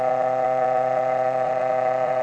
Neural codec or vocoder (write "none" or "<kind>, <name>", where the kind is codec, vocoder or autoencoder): vocoder, Vocos